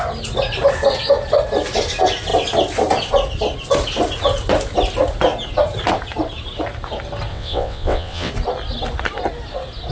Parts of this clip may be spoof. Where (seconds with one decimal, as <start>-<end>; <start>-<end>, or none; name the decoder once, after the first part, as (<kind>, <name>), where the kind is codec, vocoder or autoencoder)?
7.3-8.3 (vocoder, WaveNeXt)

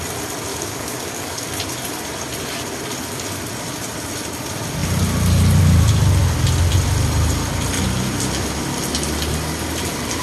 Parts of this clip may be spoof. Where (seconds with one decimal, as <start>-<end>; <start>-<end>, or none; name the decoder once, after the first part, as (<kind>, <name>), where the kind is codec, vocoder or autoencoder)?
0.5-1.5 (codec, DAC)

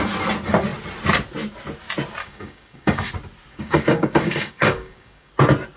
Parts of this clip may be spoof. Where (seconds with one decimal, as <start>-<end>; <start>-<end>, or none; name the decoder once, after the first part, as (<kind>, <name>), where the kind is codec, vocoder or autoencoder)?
2.2-3.1 (codec, DAC); 3.5-5.3

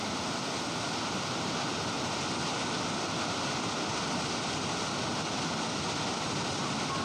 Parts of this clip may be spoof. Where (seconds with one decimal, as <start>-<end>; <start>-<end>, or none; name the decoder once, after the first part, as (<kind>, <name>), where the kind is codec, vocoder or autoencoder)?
none

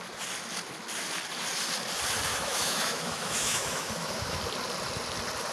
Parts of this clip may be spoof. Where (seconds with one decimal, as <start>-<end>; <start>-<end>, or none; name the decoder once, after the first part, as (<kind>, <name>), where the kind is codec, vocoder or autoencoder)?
2.3-4.4 (autoencoder, DAC-VAE)

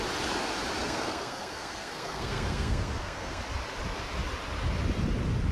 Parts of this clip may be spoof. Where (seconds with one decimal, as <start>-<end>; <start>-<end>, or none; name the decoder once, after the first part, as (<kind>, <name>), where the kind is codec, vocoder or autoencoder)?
0.8-3.4 (codec, SNAC)